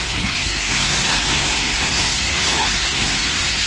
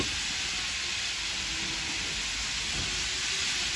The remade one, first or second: first